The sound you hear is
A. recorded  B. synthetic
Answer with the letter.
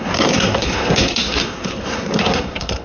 B